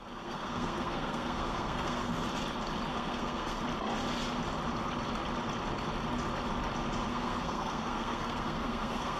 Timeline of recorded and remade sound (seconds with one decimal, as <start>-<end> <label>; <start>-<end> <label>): 0.0-2.1 remade; 2.1-2.9 recorded; 2.9-3.6 remade; 3.6-7.1 recorded; 7.1-9.2 remade